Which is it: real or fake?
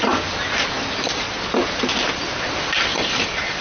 real